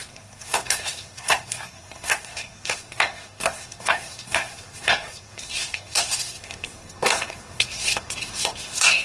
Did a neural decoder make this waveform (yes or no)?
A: yes